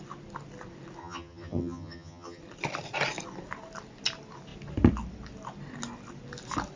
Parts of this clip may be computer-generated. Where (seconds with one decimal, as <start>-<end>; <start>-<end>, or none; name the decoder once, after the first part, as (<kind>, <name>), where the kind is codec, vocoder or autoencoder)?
1.0-2.4 (vocoder, HiFi-GAN)

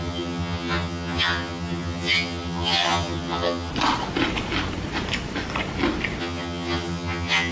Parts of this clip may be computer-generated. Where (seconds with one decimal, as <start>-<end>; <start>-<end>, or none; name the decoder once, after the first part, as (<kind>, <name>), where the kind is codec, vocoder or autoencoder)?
0.0-3.7 (vocoder, HiFi-GAN); 6.2-7.5